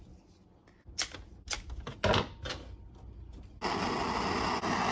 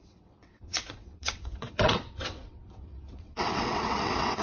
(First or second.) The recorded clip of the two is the first